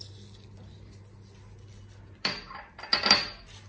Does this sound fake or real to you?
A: real